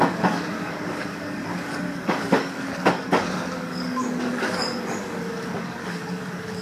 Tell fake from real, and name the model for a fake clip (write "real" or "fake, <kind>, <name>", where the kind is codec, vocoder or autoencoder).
fake, codec, DAC